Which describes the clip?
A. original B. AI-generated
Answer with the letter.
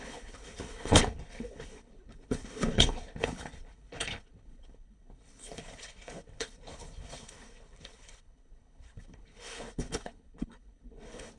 B